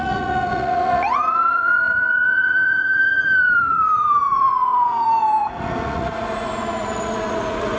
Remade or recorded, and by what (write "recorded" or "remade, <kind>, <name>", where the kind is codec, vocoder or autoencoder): remade, vocoder, Vocos